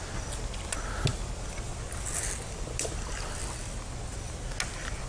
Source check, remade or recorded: recorded